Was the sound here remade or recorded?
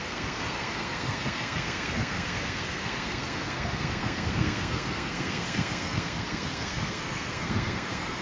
remade